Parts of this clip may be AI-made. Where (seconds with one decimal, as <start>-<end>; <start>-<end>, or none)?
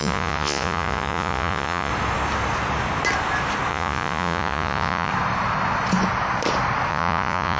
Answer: 0.0-1.9; 3.7-5.1; 6.9-7.6